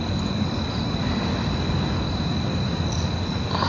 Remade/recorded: recorded